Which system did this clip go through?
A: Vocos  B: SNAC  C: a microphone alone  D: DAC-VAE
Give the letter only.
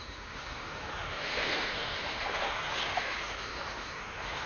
D